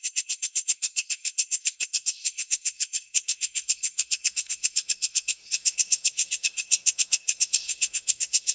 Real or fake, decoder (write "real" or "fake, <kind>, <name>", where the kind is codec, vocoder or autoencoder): fake, codec, SNAC